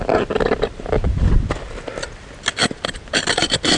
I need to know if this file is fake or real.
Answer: real